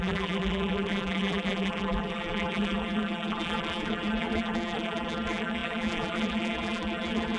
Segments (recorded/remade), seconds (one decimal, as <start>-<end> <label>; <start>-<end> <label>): 0.0-7.4 remade